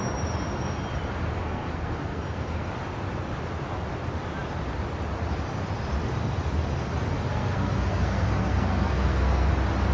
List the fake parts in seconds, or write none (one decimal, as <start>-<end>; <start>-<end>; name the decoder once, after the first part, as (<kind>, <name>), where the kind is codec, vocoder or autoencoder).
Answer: 1.4-2.7 (codec, SNAC); 7.3-9.5